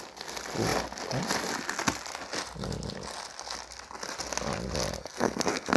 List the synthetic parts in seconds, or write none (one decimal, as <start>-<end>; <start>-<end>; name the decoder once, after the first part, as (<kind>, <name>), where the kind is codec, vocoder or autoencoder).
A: 5.0-5.8 (codec, SNAC)